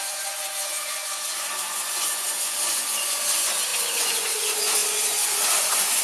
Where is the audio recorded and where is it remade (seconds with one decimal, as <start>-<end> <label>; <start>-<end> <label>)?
0.0-6.0 remade

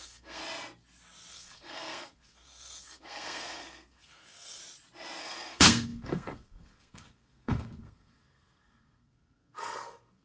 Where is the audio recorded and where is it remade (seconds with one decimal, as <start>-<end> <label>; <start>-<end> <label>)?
0.0-0.4 remade; 0.4-1.3 recorded; 1.3-4.6 remade; 4.6-5.2 recorded; 5.2-10.2 remade

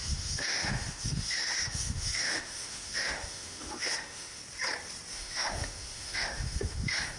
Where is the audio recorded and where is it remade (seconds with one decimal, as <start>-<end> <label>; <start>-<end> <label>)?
0.0-4.4 remade; 4.4-5.1 recorded; 5.1-7.2 remade

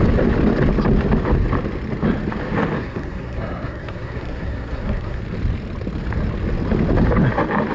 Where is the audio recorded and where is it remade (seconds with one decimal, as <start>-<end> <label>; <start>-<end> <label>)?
0.0-2.8 recorded; 2.8-5.2 remade; 5.2-7.7 recorded